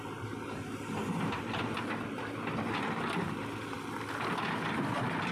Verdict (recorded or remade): recorded